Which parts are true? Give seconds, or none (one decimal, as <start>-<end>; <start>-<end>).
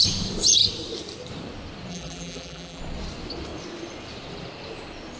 0.0-1.9; 2.8-5.2